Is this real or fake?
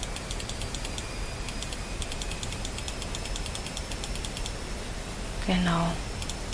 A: real